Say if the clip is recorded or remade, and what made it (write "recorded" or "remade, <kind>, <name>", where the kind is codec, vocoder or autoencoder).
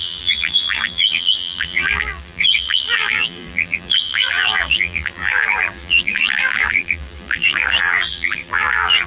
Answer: remade, vocoder, BigVGAN v2